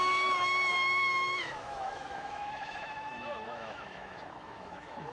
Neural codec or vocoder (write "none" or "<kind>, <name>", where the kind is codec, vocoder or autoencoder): autoencoder, DAC-VAE